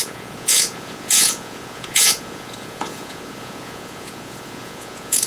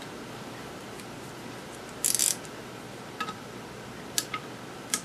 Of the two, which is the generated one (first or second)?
first